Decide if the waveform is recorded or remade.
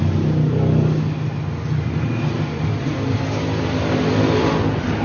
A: recorded